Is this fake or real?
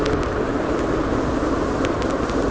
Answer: real